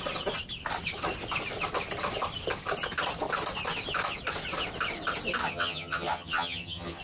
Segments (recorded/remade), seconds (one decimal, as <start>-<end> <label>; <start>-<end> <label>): 0.0-5.4 recorded; 5.4-7.0 remade